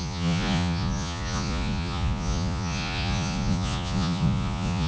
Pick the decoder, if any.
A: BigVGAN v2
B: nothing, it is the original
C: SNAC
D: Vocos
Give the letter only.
D